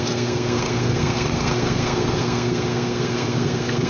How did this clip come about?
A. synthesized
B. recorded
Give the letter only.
A